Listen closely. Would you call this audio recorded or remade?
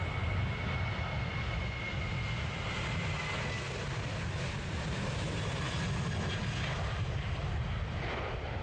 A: recorded